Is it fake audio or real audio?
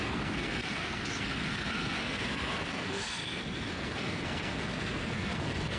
fake